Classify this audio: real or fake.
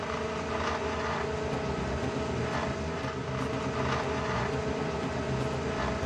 real